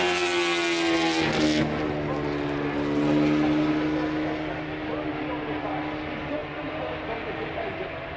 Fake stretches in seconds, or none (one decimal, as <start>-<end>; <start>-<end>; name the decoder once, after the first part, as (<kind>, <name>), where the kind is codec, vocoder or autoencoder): 6.4-8.2 (vocoder, BigVGAN v2)